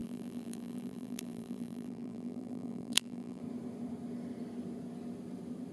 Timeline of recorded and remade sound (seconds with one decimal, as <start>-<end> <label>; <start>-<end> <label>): 0.0-3.4 remade; 3.4-5.7 recorded